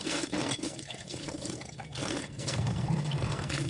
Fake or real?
fake